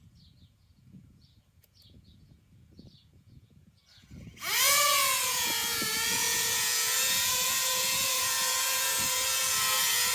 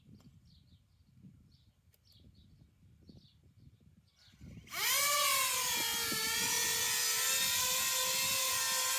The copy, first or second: first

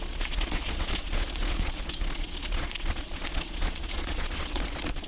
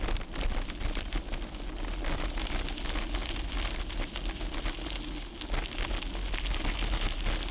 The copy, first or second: first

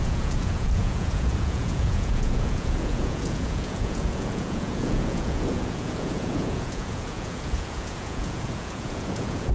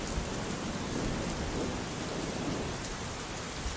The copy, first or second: first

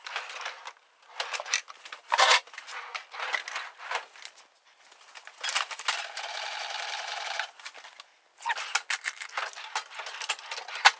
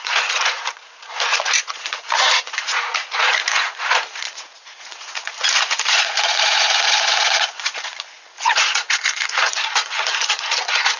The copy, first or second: second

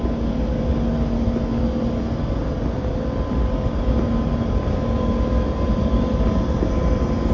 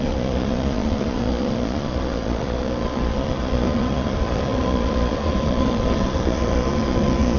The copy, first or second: second